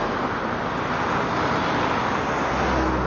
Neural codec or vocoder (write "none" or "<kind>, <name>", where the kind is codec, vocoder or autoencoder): none